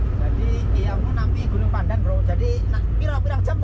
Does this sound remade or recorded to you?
recorded